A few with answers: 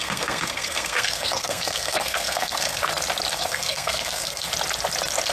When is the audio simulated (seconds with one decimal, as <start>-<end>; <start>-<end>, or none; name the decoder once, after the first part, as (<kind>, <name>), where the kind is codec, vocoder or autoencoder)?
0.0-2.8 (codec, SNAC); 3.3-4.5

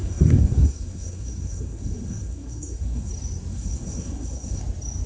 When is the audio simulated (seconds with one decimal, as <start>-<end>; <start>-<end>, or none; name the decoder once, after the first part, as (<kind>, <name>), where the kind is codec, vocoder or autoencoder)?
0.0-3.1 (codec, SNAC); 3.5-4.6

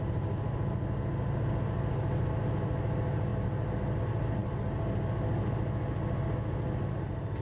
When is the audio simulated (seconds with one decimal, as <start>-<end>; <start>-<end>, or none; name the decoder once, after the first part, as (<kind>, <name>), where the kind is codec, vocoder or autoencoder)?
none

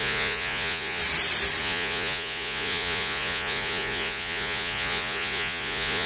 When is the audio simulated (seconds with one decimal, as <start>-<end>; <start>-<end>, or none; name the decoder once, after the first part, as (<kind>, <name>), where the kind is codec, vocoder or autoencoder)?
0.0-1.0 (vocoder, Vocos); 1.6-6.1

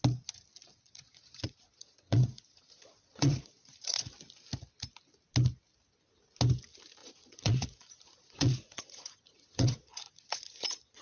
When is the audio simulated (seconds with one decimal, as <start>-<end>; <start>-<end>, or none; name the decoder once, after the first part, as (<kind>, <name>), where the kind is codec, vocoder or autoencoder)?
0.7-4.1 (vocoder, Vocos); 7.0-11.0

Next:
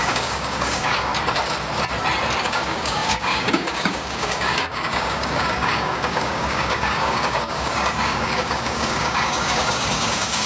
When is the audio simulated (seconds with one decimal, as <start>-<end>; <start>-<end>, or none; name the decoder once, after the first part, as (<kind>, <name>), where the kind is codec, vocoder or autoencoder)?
0.0-1.1 (codec, DAC); 2.4-10.5

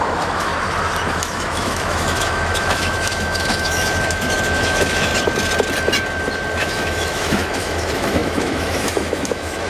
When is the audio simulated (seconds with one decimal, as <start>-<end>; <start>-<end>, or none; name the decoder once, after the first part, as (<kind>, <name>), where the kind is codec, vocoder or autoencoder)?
0.0-0.5 (autoencoder, DAC-VAE); 1.1-5.1; 6.6-9.7